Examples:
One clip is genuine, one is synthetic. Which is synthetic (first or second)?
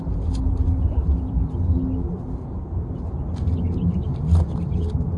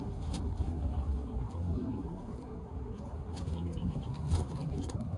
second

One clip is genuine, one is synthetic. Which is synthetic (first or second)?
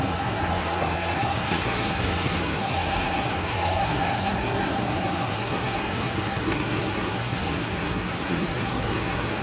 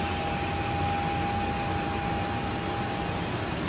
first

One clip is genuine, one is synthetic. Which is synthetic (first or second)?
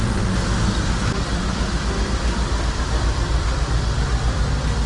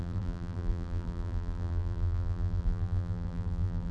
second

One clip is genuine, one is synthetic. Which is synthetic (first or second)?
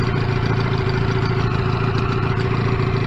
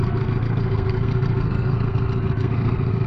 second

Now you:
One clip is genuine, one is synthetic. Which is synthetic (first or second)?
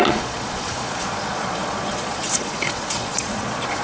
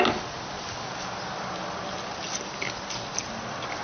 first